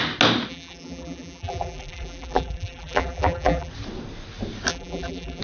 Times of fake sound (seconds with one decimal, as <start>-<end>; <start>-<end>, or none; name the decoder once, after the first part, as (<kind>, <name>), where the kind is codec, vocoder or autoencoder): 0.5-3.7 (vocoder, BigVGAN v2); 4.7-5.4